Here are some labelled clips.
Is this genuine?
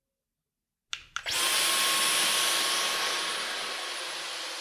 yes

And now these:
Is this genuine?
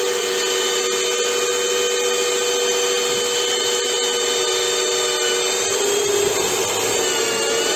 yes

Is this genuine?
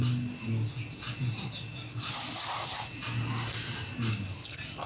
yes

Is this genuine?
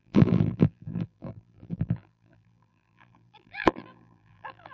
no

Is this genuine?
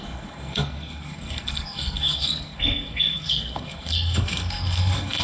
no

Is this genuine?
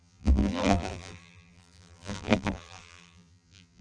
no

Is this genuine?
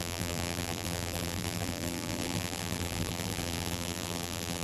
no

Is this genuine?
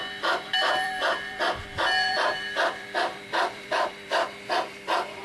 no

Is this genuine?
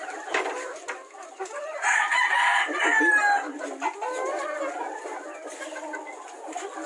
yes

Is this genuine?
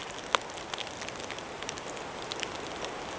yes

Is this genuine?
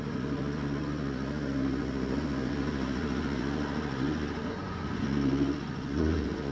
no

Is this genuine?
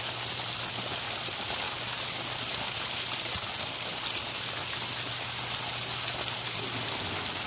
yes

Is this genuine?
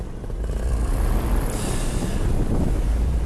yes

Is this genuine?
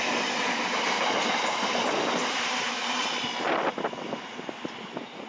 yes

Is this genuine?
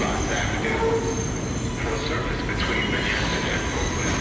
yes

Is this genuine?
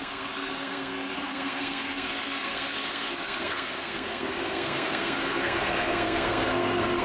no